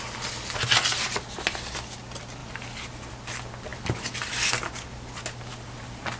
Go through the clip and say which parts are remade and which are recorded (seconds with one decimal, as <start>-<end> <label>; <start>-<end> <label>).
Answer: 0.0-6.2 recorded